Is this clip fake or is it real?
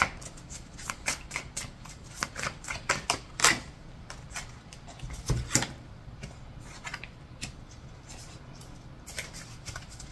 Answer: real